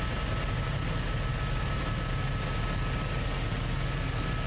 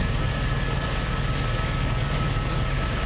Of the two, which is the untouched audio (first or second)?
first